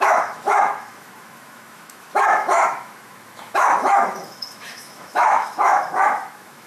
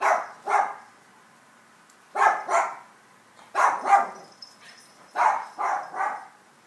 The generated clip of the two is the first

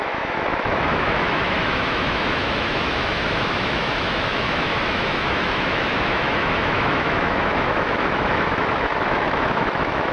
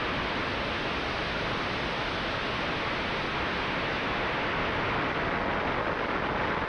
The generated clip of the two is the first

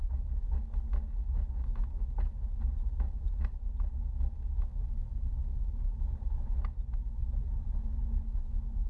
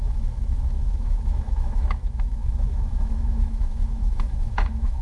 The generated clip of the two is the second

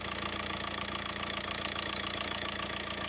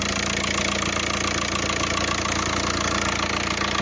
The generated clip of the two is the first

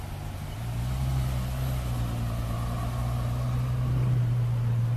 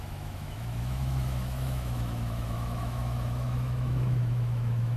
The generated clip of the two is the second